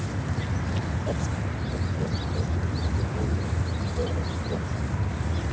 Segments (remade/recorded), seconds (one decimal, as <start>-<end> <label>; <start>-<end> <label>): 0.0-5.5 recorded